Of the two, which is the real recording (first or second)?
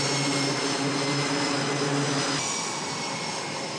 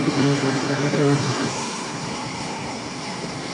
first